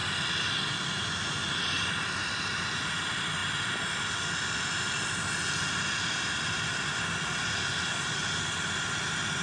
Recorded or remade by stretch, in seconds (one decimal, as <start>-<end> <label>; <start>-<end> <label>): 0.0-9.4 recorded